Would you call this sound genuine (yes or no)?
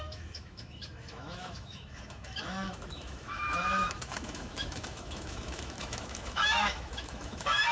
no